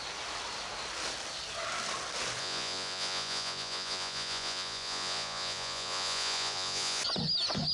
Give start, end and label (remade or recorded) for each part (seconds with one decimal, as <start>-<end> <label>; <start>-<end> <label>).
0.0-2.4 recorded; 2.4-7.0 remade; 7.0-7.7 recorded

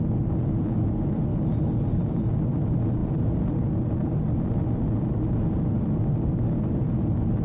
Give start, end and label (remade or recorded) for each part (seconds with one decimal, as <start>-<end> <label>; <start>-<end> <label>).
0.0-3.0 recorded; 3.0-4.2 remade; 4.2-7.4 recorded

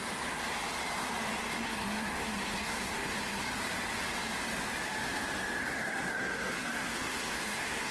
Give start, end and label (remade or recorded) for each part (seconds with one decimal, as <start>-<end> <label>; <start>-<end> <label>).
0.0-1.6 recorded; 1.6-3.4 remade; 3.4-5.6 recorded; 5.6-7.9 remade

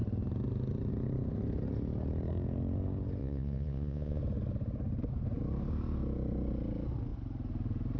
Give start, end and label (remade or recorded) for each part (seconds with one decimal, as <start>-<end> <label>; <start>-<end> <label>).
0.0-3.2 recorded; 3.2-4.2 remade; 4.2-8.0 recorded

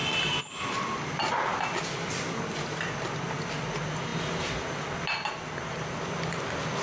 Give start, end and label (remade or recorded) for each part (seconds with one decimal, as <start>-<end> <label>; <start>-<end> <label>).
0.0-6.8 recorded